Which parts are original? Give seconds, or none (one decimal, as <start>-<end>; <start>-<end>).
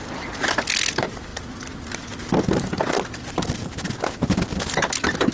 0.0-5.3